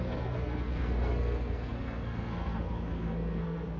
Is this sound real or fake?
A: fake